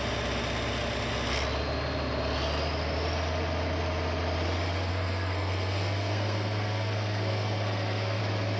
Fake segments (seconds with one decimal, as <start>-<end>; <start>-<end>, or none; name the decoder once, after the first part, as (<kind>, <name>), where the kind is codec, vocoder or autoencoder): 4.9-8.2 (codec, SNAC)